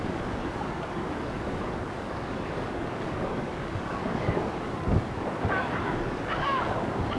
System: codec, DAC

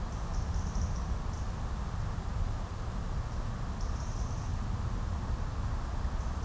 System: none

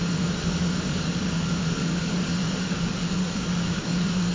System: codec, DAC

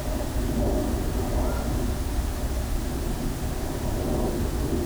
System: none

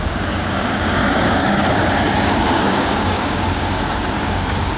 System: codec, DAC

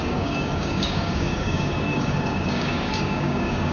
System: codec, DAC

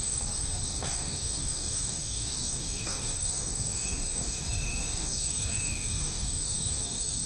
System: codec, DAC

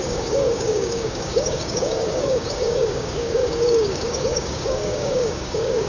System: codec, DAC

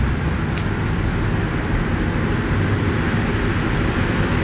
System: none